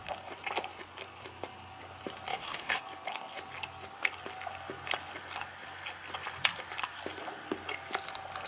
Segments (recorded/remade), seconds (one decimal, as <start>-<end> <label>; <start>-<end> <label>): 0.0-2.3 recorded; 2.3-2.8 remade; 2.8-8.5 recorded